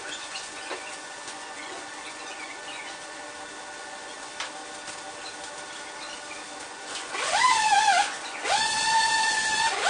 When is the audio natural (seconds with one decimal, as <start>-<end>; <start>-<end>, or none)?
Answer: 3.2-3.8; 4.3-6.6